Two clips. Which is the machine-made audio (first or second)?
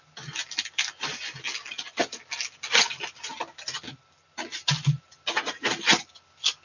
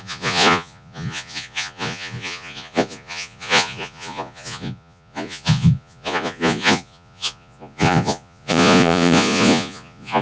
second